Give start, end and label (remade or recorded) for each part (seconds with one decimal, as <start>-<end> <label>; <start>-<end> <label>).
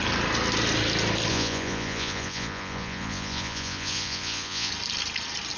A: 0.0-1.3 recorded; 1.3-4.7 remade; 4.7-5.6 recorded